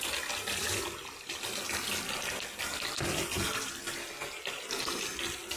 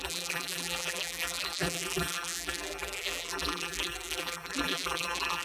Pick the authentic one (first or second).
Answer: first